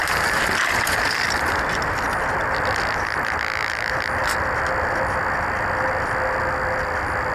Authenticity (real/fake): real